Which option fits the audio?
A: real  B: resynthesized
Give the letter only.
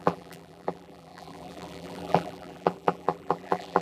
B